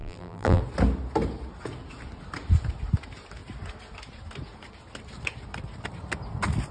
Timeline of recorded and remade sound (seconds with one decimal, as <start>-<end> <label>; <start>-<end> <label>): 0.0-0.6 remade; 0.6-6.7 recorded